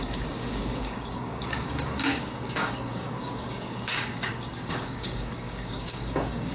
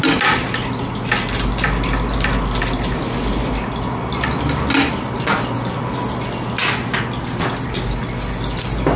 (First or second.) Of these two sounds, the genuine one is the second